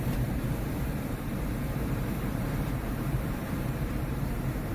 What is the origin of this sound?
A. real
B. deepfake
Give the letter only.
B